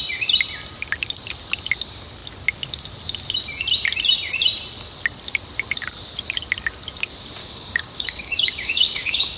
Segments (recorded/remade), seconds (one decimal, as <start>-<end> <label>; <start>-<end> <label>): 0.0-7.4 recorded; 7.4-9.4 remade